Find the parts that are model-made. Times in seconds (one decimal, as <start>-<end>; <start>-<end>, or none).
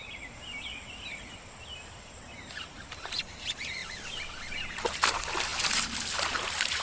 none